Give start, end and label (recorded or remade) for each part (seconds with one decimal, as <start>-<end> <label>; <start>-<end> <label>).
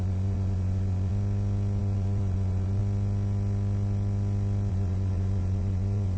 0.0-1.1 remade; 1.1-1.8 recorded; 1.8-2.8 remade; 2.8-4.7 recorded; 4.7-6.2 remade